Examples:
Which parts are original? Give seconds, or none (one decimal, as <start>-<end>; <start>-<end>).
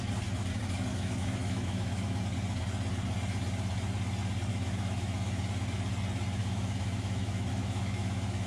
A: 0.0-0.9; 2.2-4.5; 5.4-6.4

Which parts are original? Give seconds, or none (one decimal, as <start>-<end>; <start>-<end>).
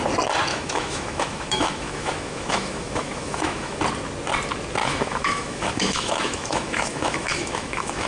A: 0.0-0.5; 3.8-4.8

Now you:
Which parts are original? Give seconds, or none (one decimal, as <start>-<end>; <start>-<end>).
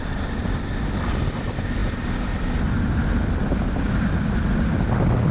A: 0.0-5.3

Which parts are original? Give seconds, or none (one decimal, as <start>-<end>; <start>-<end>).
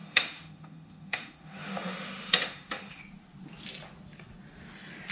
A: 3.0-5.1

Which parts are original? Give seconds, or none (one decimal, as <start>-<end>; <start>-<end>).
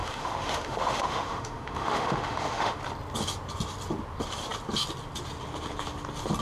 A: 2.8-6.4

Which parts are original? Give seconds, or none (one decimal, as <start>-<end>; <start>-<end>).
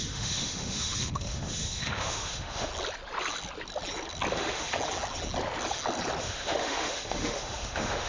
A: 2.7-4.3; 4.7-6.2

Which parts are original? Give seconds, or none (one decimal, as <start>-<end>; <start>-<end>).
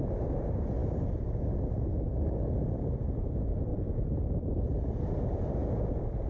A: 0.0-6.3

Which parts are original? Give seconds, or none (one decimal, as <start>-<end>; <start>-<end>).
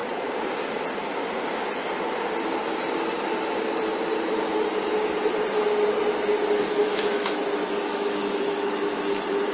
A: 0.0-6.8; 7.4-7.9